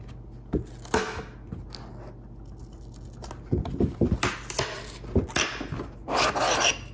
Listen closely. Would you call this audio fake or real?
real